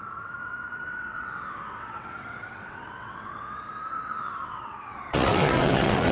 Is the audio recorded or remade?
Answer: remade